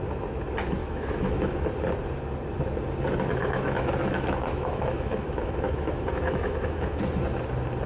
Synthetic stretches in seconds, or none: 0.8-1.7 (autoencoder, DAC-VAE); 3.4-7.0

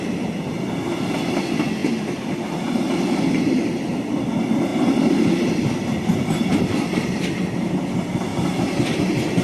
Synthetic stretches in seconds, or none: none

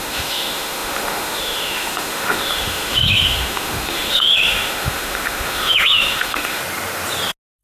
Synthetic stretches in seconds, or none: 0.0-6.6 (autoencoder, DAC-VAE)

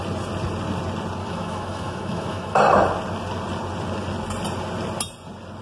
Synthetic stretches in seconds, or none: 1.2-2.6 (autoencoder, DAC-VAE)

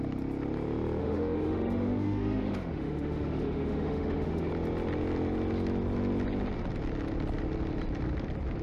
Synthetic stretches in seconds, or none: 1.0-4.5 (autoencoder, DAC-VAE)

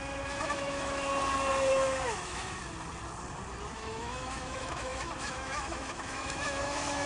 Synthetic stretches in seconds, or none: 0.0-1.1 (autoencoder, DAC-VAE); 1.7-2.6; 3.7-7.1

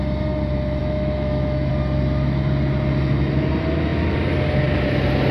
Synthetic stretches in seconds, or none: 0.8-1.7 (autoencoder, DAC-VAE)

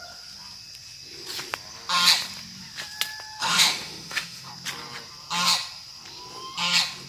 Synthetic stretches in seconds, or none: 3.4-4.5 (autoencoder, DAC-VAE)